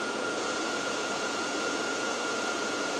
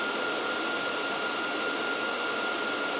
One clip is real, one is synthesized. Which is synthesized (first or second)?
first